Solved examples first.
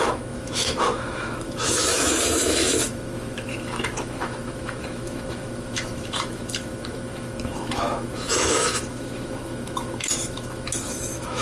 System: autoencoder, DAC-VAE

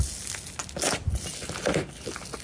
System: none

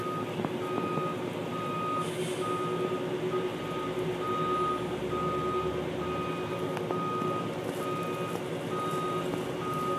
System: none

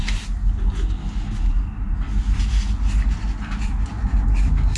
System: none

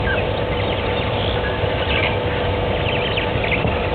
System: none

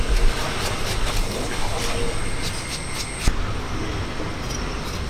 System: none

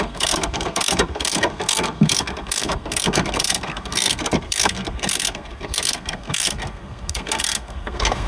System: codec, SNAC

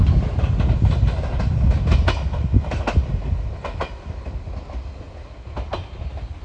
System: none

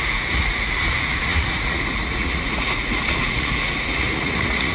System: vocoder, Vocos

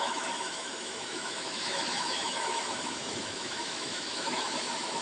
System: autoencoder, DAC-VAE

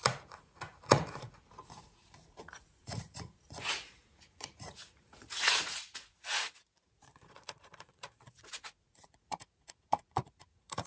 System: vocoder, Vocos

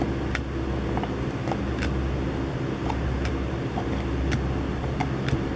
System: none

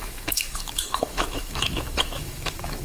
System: autoencoder, DAC-VAE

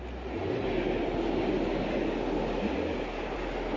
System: none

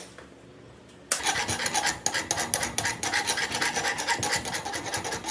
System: none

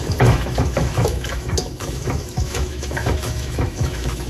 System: autoencoder, DAC-VAE